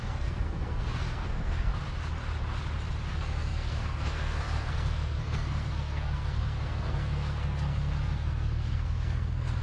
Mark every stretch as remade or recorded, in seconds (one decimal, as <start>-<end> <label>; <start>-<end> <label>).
0.0-1.7 remade; 1.7-3.1 recorded; 3.1-9.6 remade